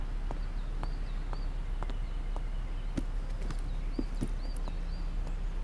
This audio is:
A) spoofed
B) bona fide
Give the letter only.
B